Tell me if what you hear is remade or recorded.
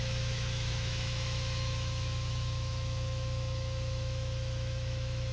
remade